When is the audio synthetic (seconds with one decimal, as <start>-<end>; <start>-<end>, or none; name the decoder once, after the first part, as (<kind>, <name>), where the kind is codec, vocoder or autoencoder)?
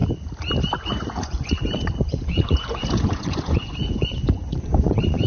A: 0.8-5.3 (vocoder, Vocos)